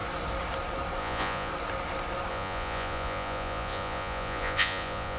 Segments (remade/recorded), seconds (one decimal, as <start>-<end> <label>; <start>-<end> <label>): 0.0-1.0 recorded; 1.0-1.5 remade; 1.5-2.3 recorded; 2.3-5.2 remade